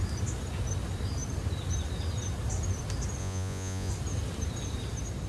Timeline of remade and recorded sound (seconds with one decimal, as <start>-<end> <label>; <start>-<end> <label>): 0.0-3.2 recorded; 3.2-3.9 remade; 3.9-5.3 recorded